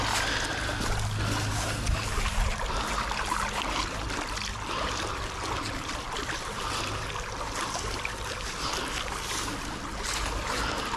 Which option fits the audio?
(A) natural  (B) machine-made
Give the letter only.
A